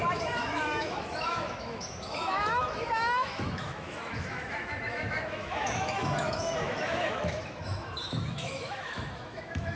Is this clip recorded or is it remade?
remade